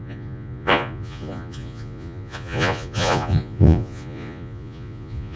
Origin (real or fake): fake